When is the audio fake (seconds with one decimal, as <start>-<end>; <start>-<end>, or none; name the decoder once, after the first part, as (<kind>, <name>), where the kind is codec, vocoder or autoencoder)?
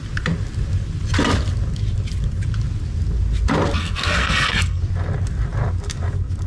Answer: 3.8-4.8 (codec, SNAC)